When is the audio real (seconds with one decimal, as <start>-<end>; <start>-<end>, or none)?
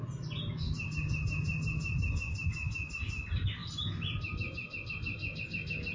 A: 0.0-5.9